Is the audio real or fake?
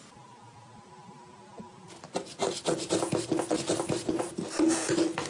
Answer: fake